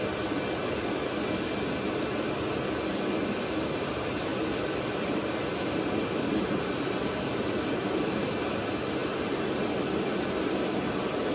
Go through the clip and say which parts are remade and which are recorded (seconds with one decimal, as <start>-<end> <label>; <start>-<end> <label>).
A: 0.0-4.3 recorded; 4.3-5.2 remade; 5.2-9.0 recorded; 9.0-10.5 remade; 10.5-11.3 recorded